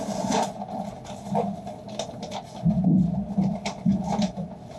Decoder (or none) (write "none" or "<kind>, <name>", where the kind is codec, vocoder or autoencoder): none